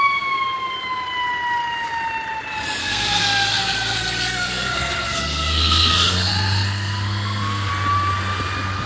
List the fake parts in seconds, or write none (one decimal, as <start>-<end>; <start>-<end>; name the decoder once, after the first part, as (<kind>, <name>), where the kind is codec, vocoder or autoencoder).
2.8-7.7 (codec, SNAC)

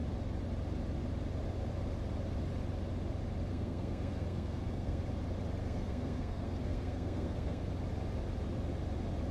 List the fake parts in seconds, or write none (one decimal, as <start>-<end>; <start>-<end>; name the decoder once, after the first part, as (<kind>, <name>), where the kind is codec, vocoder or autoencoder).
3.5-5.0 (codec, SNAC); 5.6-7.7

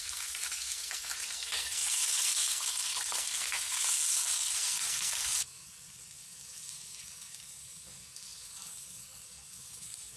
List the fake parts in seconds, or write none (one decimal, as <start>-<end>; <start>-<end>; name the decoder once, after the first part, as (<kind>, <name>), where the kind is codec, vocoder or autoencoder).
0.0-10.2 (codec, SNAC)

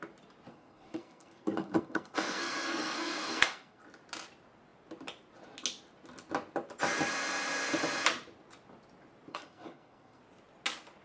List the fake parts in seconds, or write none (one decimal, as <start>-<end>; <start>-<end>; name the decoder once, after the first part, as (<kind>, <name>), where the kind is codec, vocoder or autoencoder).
0.5-3.8 (codec, SNAC); 9.3-10.2

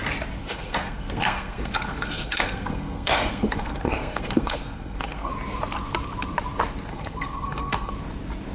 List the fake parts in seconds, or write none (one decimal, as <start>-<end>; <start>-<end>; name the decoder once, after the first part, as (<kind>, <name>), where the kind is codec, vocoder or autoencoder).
0.4-5.3 (codec, SNAC); 6.9-7.9

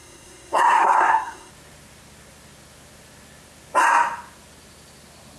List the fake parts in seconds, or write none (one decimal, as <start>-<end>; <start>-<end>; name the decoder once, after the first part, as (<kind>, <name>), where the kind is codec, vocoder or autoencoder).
0.0-1.5 (codec, SNAC)

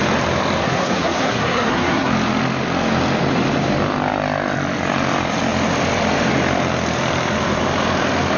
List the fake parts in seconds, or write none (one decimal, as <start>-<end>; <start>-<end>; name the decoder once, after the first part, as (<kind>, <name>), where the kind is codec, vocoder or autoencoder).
0.6-2.1 (codec, SNAC)

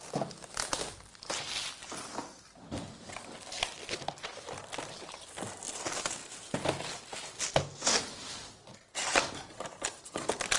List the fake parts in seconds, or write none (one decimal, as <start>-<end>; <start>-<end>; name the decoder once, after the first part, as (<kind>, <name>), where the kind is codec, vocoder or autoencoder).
none